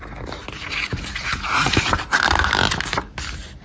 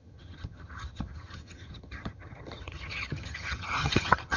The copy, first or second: second